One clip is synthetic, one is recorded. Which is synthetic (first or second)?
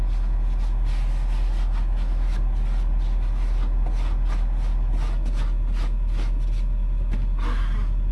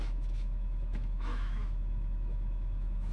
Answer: second